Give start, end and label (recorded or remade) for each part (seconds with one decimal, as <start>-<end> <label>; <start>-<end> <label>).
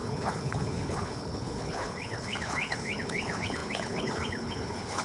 0.0-5.0 remade